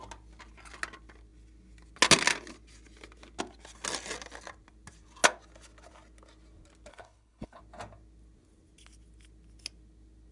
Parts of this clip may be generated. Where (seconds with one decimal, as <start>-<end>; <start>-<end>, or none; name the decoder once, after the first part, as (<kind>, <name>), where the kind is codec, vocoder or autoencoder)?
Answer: 6.9-7.6 (codec, HILCodec)